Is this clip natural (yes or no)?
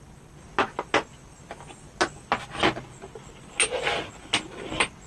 yes